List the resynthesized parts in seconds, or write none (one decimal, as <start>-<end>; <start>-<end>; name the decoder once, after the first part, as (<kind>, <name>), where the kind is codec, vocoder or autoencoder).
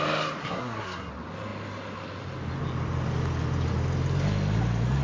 0.4-1.1 (codec, SNAC)